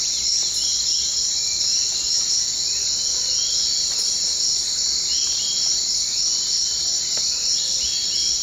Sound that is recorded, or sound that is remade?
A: recorded